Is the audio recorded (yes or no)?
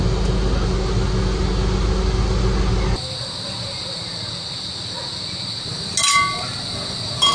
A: yes